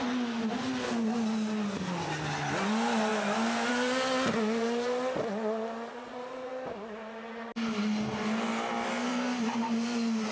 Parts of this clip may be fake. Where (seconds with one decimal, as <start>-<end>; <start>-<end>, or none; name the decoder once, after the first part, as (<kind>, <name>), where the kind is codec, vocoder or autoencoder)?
5.9-6.5 (vocoder, Vocos)